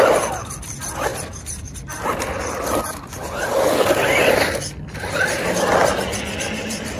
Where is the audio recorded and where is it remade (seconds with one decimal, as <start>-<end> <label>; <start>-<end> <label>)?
0.0-7.0 recorded